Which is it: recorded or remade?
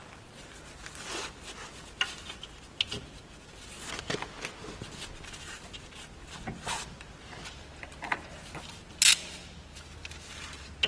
recorded